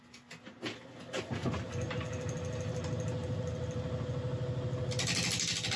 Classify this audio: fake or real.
real